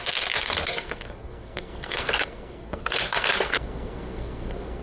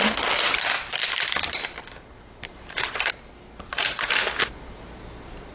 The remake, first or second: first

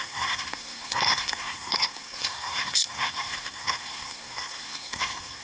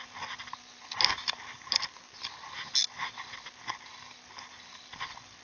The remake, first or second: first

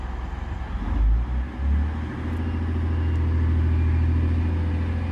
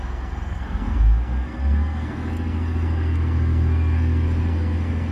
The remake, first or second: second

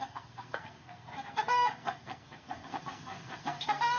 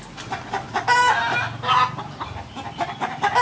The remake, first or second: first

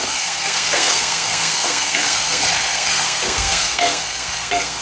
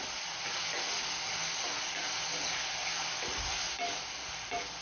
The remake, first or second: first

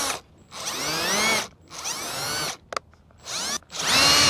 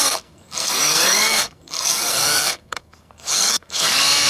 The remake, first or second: second